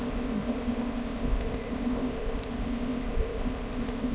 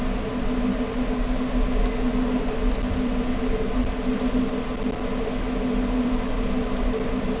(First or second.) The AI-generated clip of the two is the first